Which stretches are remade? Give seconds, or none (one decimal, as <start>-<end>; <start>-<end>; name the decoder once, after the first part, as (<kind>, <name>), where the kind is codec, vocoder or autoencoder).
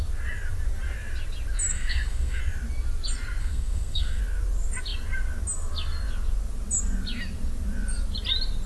1.7-2.4 (codec, SNAC); 3.4-4.2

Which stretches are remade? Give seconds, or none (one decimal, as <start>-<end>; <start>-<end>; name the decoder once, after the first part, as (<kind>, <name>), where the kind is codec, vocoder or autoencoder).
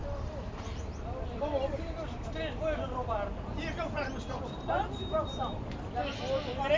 none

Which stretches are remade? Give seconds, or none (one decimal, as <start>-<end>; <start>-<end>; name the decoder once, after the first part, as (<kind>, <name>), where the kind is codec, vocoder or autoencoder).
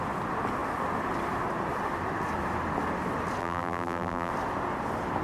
3.4-4.3 (vocoder, BigVGAN v2)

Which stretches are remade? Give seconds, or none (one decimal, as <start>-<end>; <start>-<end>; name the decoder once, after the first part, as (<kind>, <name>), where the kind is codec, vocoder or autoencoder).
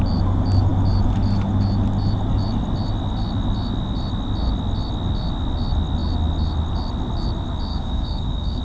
7.7-8.6 (codec, DAC)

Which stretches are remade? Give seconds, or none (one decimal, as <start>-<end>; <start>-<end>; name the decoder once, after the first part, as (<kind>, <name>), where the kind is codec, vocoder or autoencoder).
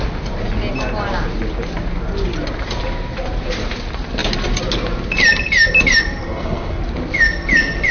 6.2-6.8 (codec, SNAC)